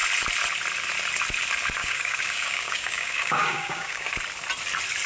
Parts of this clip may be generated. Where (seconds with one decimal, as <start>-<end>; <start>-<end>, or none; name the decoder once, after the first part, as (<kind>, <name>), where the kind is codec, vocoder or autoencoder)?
1.8-4.1 (codec, DAC)